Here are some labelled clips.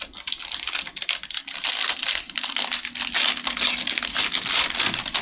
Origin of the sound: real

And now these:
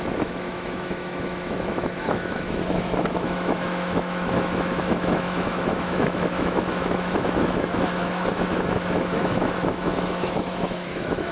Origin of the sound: fake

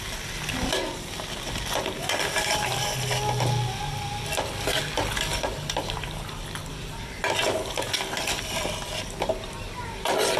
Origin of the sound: real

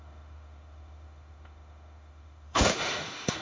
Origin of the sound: fake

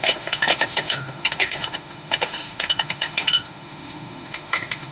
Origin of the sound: fake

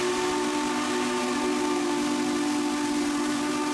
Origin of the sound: real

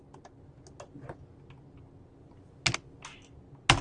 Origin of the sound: real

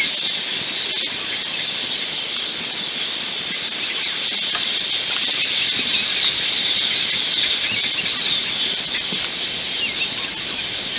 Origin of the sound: real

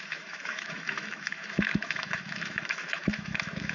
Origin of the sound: fake